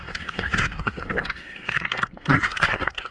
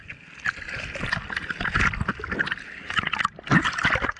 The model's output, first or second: first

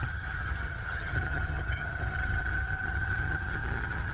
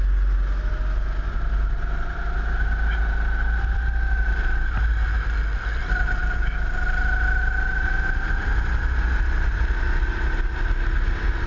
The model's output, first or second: first